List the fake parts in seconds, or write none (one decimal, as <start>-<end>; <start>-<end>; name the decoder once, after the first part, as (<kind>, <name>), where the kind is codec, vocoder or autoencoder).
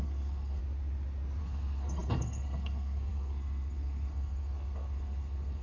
0.0-0.6 (codec, SNAC); 1.4-5.6